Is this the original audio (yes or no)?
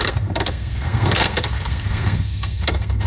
no